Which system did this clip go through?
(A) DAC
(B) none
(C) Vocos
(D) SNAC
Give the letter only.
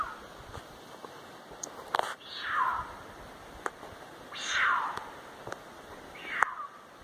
B